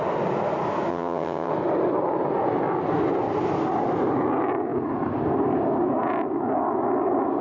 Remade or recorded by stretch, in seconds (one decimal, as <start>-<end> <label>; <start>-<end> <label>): 0.0-0.9 recorded; 0.9-1.5 remade; 1.5-7.4 recorded